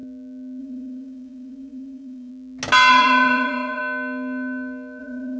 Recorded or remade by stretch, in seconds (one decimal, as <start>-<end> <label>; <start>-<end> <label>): 0.0-0.6 recorded; 0.6-2.3 remade; 2.3-2.9 recorded; 2.9-3.8 remade; 3.8-5.0 recorded; 5.0-5.4 remade